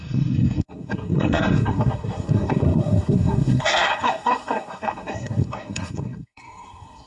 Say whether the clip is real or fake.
fake